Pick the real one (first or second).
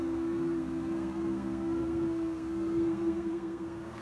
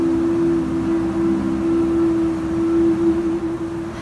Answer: second